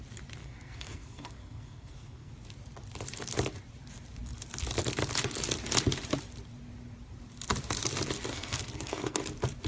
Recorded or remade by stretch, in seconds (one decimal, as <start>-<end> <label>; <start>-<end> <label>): 0.0-0.4 recorded; 0.4-2.3 remade; 2.3-8.3 recorded; 8.3-9.2 remade; 9.2-9.7 recorded